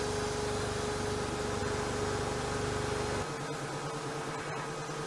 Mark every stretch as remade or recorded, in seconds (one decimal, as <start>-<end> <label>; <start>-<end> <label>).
0.0-5.1 recorded